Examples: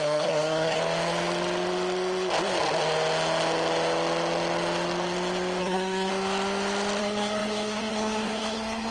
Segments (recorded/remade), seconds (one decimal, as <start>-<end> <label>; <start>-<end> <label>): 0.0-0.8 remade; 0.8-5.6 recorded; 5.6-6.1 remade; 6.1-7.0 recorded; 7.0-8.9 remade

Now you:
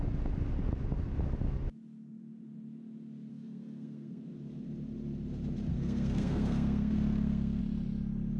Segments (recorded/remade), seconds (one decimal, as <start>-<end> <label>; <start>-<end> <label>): 0.0-3.3 recorded; 3.3-4.2 remade; 4.2-5.7 recorded; 5.7-7.6 remade; 7.6-8.4 recorded

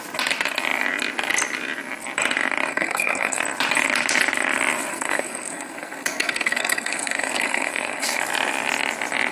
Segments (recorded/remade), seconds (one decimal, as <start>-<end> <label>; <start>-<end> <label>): 0.0-2.7 recorded; 2.7-3.4 remade; 3.4-4.9 recorded; 4.9-8.2 remade; 8.2-9.3 recorded

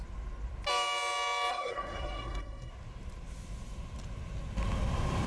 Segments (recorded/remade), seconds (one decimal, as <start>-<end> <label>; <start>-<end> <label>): 0.0-1.5 recorded; 1.5-2.7 remade; 2.7-5.3 recorded